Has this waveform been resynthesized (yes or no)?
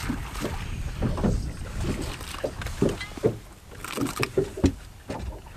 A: no